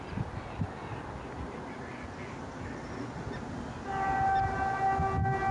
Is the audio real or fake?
real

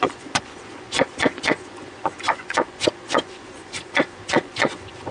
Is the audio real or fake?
fake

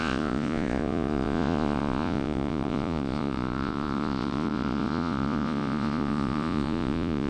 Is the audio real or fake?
fake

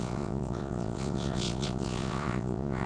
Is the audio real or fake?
fake